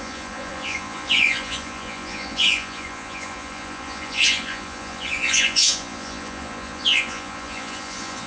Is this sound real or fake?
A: fake